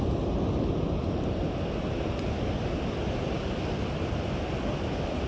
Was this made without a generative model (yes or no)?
yes